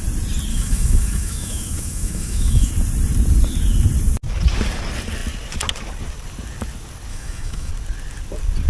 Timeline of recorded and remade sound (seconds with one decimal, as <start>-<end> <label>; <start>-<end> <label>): 0.0-0.5 recorded; 0.5-2.7 remade; 2.7-7.1 recorded; 7.1-7.7 remade; 7.7-8.7 recorded